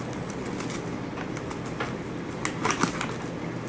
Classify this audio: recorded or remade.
recorded